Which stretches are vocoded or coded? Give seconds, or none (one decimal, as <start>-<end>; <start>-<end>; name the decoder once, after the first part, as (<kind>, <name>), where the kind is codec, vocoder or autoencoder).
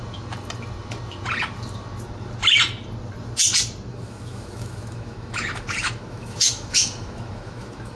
3.9-8.0 (autoencoder, DAC-VAE)